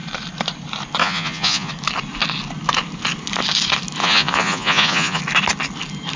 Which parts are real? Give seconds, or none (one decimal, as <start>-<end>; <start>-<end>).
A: 0.0-1.0; 1.7-4.0; 5.2-6.2